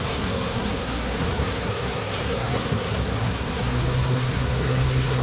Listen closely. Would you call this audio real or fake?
fake